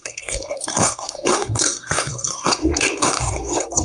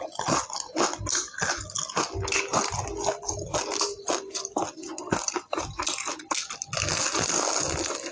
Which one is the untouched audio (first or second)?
second